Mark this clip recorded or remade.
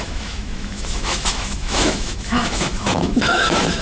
remade